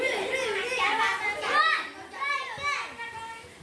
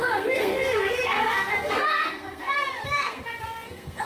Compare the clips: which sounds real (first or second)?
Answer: first